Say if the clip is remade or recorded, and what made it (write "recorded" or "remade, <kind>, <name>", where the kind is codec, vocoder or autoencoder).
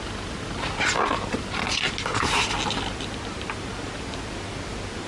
recorded